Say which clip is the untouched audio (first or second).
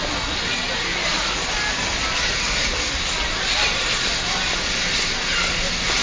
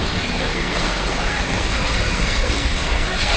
first